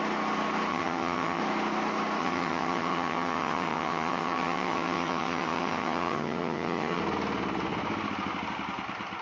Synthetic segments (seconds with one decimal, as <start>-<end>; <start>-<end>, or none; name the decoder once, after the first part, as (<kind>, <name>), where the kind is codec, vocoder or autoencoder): 0.7-1.4 (vocoder, HiFi-GAN); 2.2-7.0